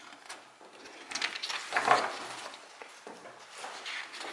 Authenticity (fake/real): real